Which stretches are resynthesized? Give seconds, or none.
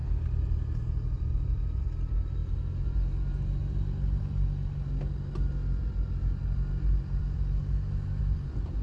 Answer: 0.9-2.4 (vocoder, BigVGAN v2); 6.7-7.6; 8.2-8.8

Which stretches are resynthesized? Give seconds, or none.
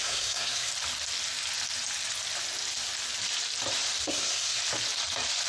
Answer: 0.0-0.7 (codec, SNAC); 4.0-4.6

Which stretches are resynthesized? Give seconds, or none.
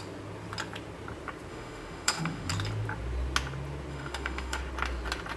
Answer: 1.5-2.5 (autoencoder, DAC-VAE); 3.9-4.6